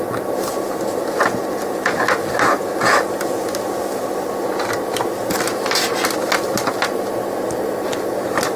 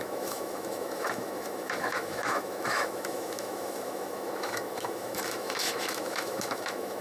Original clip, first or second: first